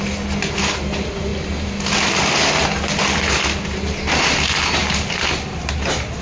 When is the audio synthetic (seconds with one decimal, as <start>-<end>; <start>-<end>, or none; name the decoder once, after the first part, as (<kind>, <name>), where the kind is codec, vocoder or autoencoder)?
none